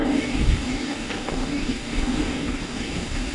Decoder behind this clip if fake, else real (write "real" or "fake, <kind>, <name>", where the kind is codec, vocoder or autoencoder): fake, codec, DAC